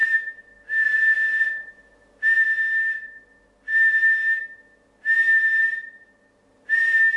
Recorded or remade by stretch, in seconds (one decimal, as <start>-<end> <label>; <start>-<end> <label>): 0.0-7.2 recorded